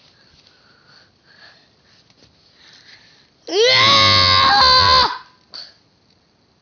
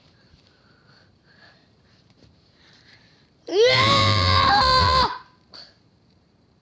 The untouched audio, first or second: first